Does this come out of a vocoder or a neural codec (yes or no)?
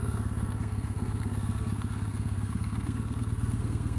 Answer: yes